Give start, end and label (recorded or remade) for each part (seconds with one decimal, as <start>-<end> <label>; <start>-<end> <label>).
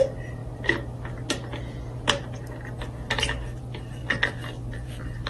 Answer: 0.0-4.0 recorded; 4.0-5.3 remade